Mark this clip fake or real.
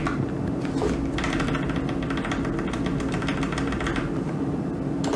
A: real